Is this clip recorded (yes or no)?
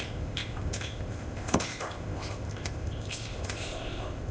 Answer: no